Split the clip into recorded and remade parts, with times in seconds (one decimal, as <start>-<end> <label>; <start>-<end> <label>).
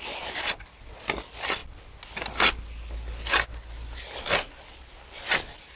0.0-5.8 recorded